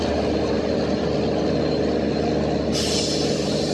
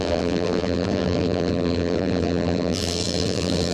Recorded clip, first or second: first